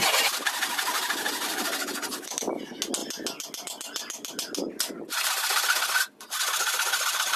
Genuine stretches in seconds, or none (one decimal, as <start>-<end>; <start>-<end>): 0.0-7.4